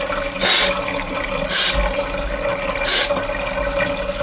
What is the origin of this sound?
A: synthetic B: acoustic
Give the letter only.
B